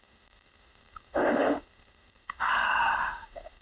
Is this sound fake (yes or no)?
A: yes